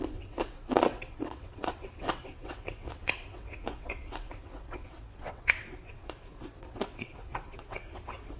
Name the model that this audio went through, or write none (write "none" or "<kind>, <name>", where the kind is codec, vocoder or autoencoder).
vocoder, WaveNeXt